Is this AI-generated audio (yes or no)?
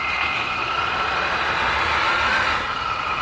no